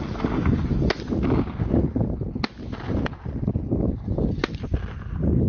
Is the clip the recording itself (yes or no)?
yes